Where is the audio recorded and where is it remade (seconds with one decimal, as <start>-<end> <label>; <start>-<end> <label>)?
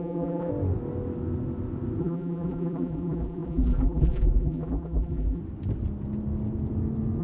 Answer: 0.0-0.5 remade; 0.5-2.0 recorded; 2.0-5.4 remade; 5.4-7.2 recorded